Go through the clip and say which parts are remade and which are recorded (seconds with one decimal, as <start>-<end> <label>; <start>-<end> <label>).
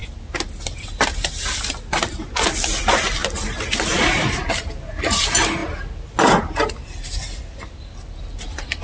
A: 0.0-8.8 recorded